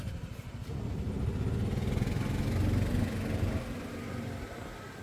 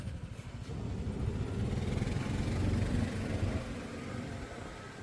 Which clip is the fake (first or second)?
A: second